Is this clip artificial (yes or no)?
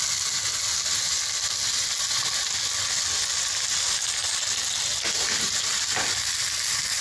no